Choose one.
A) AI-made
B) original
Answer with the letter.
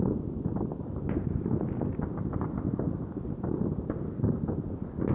B